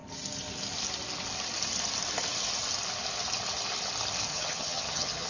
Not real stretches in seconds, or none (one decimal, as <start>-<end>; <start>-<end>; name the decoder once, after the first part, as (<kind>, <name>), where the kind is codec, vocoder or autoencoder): 4.3-5.3 (vocoder, HiFi-GAN)